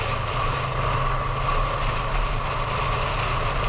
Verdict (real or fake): real